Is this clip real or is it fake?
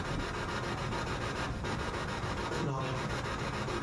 real